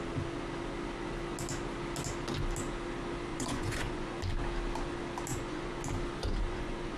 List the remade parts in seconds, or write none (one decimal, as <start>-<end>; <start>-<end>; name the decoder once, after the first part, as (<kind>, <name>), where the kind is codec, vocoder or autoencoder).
3.3-4.2 (vocoder, Vocos); 5.3-5.8; 6.2-7.0